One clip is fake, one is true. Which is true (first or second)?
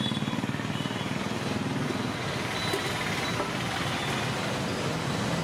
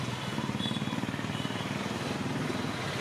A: first